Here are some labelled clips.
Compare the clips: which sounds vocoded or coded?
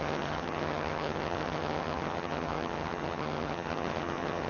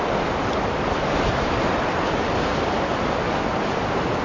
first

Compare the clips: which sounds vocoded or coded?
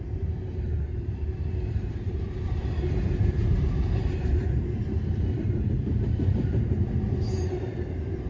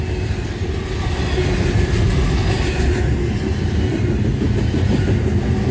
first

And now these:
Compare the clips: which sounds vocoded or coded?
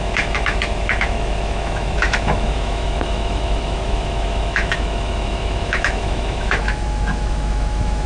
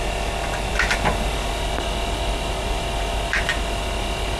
first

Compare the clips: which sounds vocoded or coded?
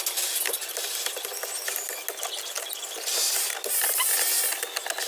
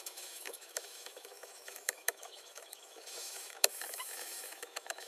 second